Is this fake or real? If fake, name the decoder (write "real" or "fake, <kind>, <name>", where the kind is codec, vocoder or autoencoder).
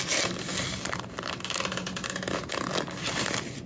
real